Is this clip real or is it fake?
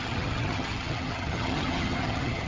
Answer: fake